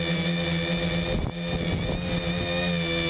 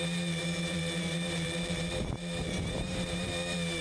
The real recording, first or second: first